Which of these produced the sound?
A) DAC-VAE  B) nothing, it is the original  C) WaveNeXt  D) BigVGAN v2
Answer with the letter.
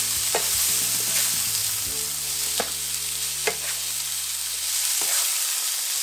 B